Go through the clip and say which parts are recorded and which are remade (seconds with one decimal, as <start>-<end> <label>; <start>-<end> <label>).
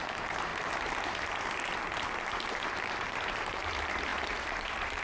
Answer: 0.0-0.5 remade; 0.5-2.9 recorded; 2.9-5.0 remade